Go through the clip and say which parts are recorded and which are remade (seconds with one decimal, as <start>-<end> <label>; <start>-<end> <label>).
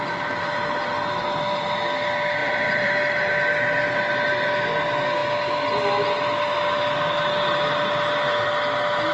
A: 0.0-2.4 recorded; 2.4-3.0 remade; 3.0-9.1 recorded